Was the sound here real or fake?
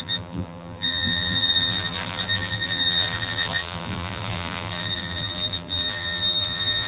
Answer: fake